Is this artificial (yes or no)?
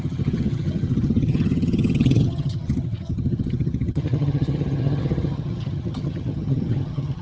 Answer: yes